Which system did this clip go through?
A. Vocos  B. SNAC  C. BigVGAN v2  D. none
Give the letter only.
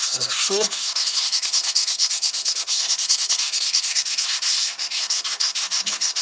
B